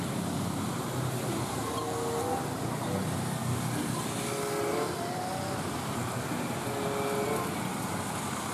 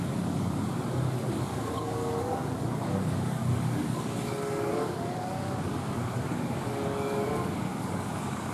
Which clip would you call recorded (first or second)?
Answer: first